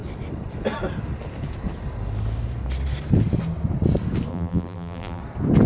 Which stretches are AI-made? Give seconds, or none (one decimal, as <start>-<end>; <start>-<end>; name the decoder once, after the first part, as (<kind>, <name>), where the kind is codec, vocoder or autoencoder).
4.3-5.2 (vocoder, BigVGAN v2)